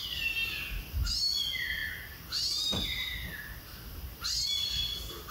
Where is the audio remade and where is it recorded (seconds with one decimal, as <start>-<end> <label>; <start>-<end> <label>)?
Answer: 0.0-5.3 recorded